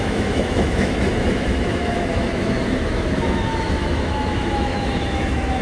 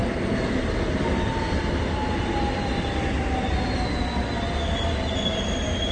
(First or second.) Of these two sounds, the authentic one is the second